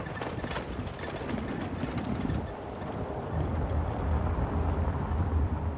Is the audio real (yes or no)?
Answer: no